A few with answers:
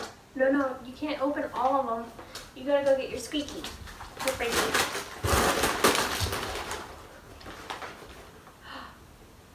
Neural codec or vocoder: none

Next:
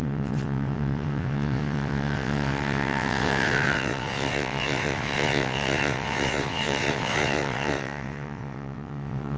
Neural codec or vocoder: vocoder, WaveNeXt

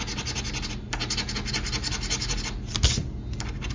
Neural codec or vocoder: none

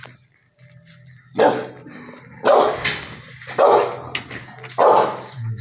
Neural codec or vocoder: none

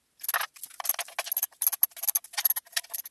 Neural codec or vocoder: none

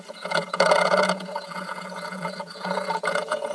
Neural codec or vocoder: vocoder, Vocos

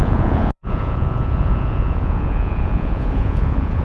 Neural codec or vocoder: vocoder, Vocos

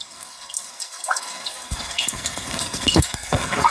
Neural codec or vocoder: codec, SNAC